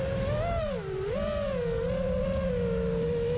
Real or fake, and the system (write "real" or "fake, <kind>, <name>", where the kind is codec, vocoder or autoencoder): real